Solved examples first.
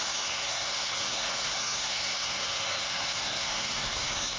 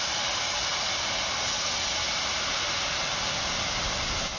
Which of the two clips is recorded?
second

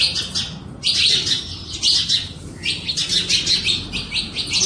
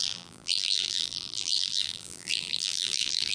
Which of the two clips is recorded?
first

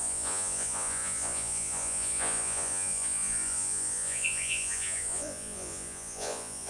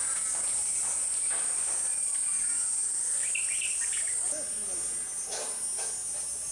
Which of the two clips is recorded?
second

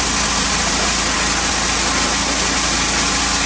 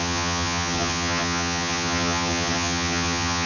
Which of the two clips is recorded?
first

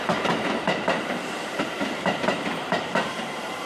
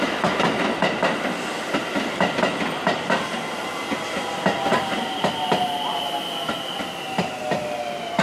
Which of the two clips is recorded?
second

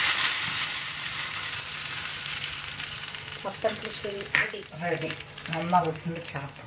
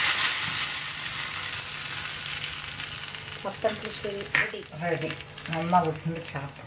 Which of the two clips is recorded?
second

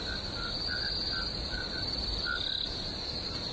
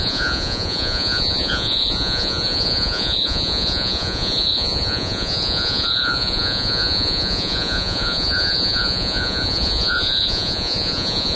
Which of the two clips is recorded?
first